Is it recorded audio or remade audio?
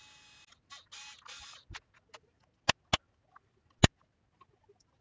recorded